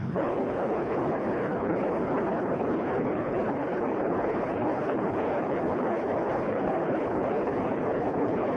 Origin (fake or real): fake